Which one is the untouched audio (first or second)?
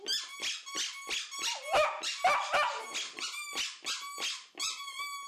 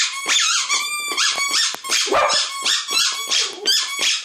first